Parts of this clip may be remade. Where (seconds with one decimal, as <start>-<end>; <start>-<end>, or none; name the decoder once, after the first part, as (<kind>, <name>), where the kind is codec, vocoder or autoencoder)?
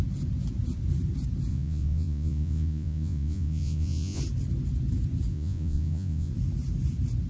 1.5-4.2 (vocoder, Vocos); 5.3-6.3